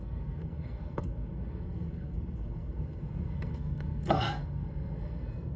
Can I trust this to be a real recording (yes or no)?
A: no